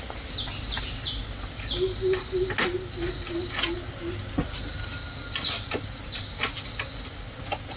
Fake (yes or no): no